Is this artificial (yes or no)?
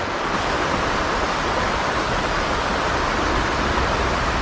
no